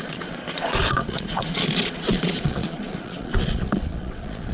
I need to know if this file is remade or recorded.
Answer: remade